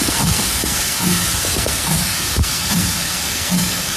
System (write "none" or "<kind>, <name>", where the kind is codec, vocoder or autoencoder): codec, SNAC